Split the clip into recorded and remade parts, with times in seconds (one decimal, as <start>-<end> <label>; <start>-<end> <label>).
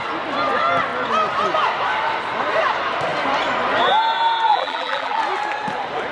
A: 0.0-4.5 recorded; 4.5-5.2 remade; 5.2-6.1 recorded